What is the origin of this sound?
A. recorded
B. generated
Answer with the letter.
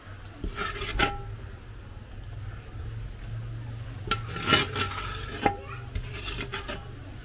A